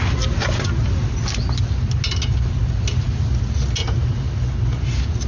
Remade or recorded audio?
recorded